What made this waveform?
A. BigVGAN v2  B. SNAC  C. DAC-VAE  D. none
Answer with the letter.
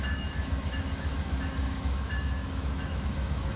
C